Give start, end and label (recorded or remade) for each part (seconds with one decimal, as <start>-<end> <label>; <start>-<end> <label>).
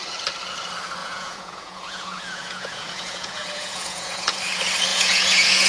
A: 0.0-1.0 recorded; 1.0-4.4 remade; 4.4-4.9 recorded; 4.9-5.7 remade